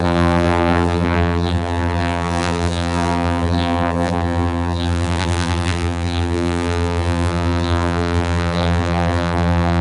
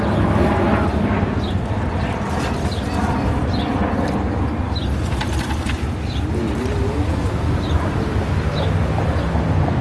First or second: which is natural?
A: second